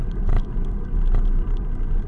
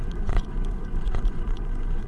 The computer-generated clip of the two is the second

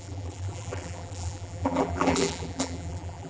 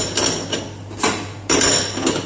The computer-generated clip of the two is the first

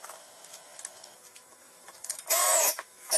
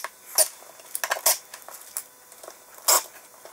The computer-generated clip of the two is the first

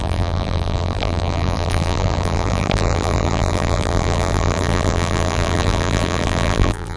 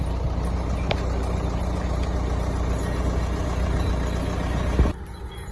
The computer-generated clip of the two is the first